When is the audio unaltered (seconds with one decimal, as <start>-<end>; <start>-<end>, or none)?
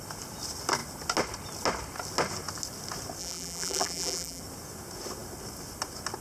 0.0-3.2; 4.4-6.2